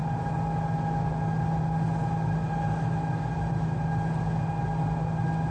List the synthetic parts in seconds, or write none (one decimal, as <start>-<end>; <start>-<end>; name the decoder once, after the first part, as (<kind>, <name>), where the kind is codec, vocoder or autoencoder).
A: none